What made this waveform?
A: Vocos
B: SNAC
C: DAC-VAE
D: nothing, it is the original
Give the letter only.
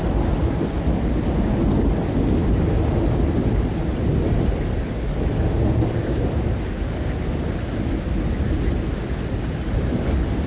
D